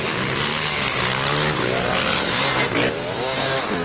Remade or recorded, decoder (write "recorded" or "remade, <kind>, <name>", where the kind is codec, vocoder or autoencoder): recorded